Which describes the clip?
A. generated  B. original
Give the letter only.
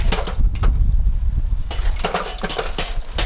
B